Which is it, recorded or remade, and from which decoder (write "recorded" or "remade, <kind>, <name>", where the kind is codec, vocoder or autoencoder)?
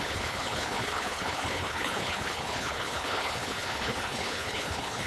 remade, codec, HILCodec